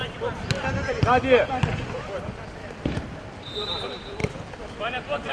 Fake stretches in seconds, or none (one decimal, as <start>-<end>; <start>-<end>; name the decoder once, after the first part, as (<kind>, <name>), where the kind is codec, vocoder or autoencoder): 2.6-3.8 (vocoder, BigVGAN v2)